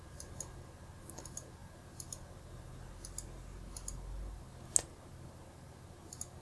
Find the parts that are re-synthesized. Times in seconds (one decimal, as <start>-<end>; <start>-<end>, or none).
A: none